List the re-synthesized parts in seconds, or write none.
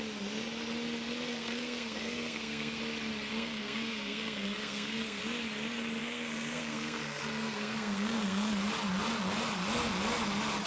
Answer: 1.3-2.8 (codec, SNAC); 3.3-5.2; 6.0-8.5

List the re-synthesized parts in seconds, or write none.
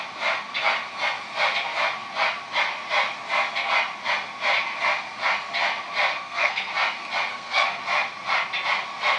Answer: 6.1-6.7 (codec, SNAC); 7.3-7.8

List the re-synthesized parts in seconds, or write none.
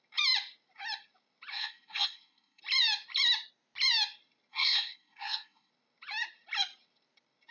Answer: 1.5-2.6 (codec, SNAC); 4.5-5.7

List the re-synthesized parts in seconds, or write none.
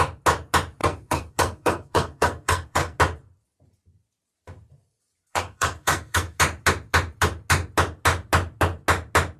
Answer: 0.8-3.0 (codec, SNAC); 5.3-6.4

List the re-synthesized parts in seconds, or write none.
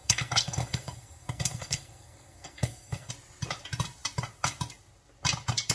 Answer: 0.0-3.1 (codec, SNAC)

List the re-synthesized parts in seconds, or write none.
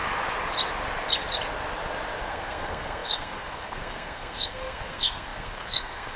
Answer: 2.2-6.2 (codec, SNAC)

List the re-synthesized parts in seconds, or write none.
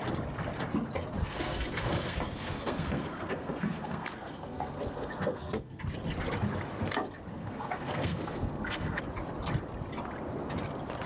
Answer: 1.2-5.8 (codec, SNAC); 7.3-9.0